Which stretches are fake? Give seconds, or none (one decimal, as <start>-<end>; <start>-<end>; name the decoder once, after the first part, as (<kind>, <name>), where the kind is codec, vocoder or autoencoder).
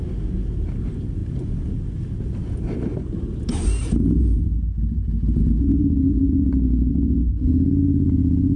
none